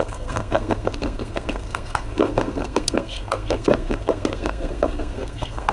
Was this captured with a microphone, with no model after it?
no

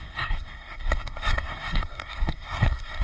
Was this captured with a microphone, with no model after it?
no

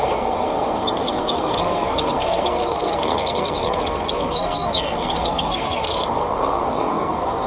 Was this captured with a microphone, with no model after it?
no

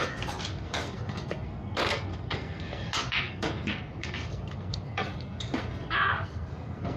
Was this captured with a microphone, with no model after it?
no